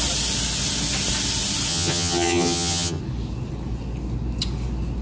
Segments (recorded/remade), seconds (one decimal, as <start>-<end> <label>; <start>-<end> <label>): 0.0-1.7 recorded; 1.7-3.0 remade; 3.0-5.0 recorded